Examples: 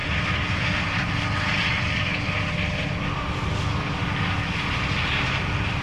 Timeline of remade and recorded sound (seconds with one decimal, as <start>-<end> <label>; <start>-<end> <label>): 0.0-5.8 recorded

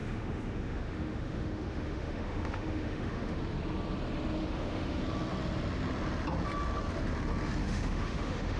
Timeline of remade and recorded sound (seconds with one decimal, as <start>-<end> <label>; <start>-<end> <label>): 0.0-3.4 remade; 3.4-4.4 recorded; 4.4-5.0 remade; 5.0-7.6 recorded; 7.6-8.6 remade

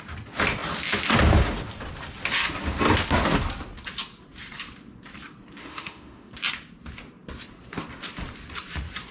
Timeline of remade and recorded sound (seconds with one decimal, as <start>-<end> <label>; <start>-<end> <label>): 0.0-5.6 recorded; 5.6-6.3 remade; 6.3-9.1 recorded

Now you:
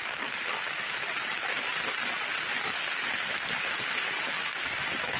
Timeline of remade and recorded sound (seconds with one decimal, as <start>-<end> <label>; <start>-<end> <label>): 0.0-5.2 recorded

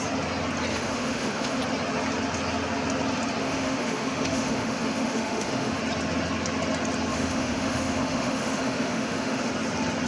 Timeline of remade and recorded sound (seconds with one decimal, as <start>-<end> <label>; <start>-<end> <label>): 0.0-0.7 recorded; 0.7-1.6 remade; 1.6-3.4 recorded; 3.4-5.8 remade; 5.8-7.1 recorded; 7.1-9.5 remade; 9.5-10.1 recorded

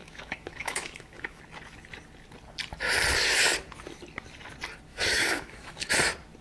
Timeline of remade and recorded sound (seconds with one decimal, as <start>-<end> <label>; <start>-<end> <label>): 0.0-1.4 remade; 1.4-4.9 recorded; 4.9-5.9 remade; 5.9-6.4 recorded

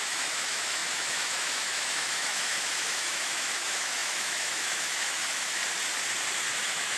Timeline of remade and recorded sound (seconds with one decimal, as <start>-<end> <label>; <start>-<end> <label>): 0.0-5.6 remade; 5.6-6.5 recorded; 6.5-7.0 remade

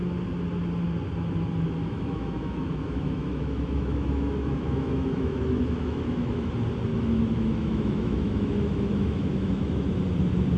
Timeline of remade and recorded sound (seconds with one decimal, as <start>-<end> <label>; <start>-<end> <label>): 0.0-1.8 recorded; 1.8-6.5 remade; 6.5-6.9 recorded; 6.9-9.9 remade; 9.9-10.6 recorded